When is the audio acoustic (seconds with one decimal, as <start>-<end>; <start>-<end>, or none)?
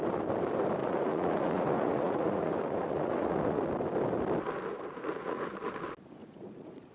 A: 0.0-0.8; 3.6-4.7; 5.5-6.2